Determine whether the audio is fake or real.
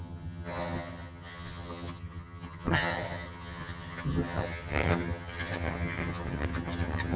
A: fake